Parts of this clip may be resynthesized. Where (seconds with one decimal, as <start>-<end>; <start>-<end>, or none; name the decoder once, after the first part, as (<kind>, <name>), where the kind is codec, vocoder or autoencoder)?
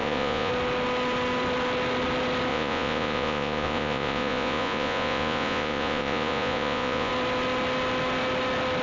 0.0-0.5 (vocoder, Vocos); 2.5-7.1